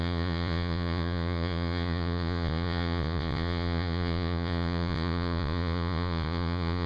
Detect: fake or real fake